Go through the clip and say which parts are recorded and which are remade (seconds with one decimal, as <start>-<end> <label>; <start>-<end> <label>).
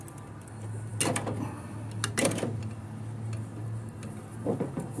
0.0-5.0 recorded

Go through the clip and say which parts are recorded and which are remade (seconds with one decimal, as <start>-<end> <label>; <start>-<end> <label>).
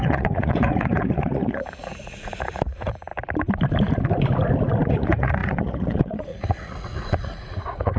0.0-3.1 remade; 3.1-4.9 recorded; 4.9-8.0 remade